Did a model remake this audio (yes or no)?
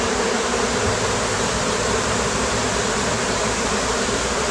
yes